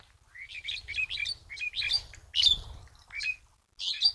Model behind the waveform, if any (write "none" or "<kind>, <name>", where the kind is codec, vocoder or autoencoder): none